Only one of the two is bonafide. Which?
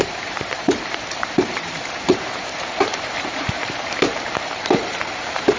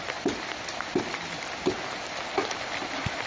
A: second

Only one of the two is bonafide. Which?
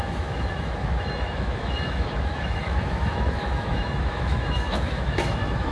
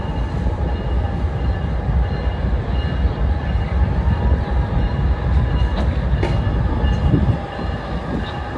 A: second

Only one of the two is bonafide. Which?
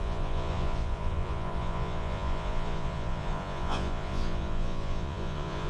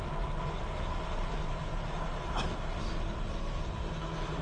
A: second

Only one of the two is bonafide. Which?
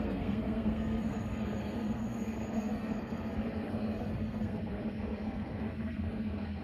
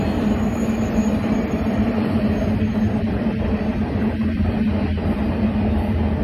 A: second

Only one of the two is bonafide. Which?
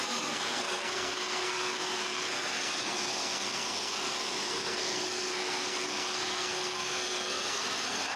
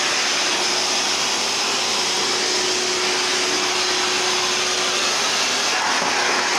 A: second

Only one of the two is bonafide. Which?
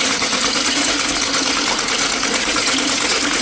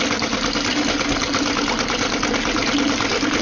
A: second